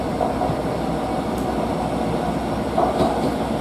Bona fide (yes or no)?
yes